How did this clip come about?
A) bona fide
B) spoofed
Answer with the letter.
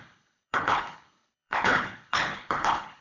B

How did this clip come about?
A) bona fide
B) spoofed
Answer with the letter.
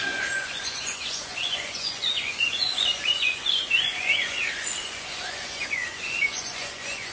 B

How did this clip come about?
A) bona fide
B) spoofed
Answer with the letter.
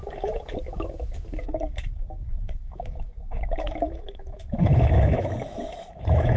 B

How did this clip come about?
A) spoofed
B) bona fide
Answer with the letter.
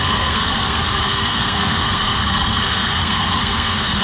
A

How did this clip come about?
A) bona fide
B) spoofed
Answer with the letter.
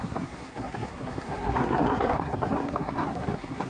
B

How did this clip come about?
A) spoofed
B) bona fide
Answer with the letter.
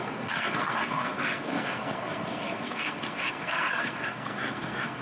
A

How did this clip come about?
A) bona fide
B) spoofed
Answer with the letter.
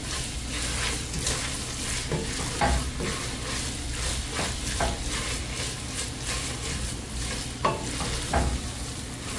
A